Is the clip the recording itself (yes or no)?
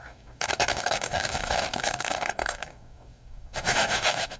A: no